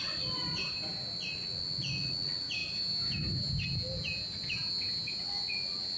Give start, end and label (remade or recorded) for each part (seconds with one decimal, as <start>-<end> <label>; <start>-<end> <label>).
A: 0.0-6.0 recorded